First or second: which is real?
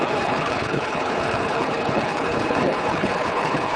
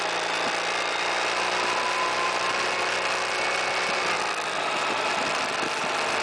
second